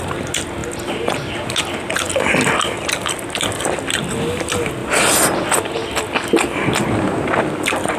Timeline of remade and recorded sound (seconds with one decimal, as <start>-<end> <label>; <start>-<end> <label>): 0.0-8.0 recorded